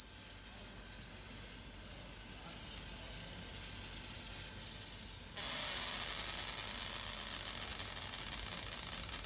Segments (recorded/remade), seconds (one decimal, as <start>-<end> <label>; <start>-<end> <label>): 0.0-9.3 recorded